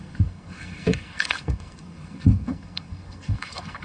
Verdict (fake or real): fake